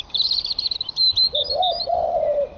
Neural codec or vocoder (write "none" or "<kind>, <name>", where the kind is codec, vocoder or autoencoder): vocoder, BigVGAN v2